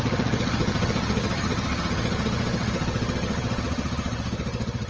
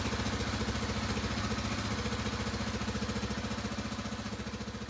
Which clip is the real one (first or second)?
second